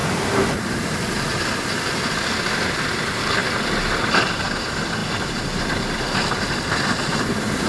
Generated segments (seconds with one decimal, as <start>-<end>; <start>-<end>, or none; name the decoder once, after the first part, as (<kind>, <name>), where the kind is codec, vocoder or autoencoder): 2.8-3.4 (vocoder, BigVGAN v2); 4.1-7.7